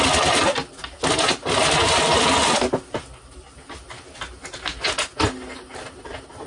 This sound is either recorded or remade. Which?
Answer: recorded